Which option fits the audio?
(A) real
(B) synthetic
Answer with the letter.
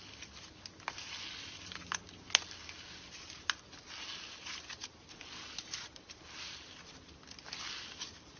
A